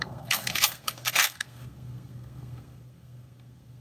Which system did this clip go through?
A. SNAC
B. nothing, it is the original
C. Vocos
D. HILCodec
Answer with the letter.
A